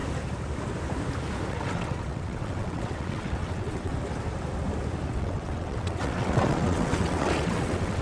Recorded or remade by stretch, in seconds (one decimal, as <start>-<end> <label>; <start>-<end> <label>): 0.0-1.5 recorded; 1.5-3.9 remade; 3.9-5.1 recorded; 5.1-8.0 remade